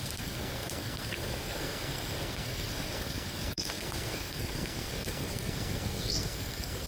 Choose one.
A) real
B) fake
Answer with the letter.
B